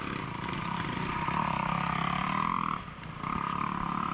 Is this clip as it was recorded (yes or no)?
no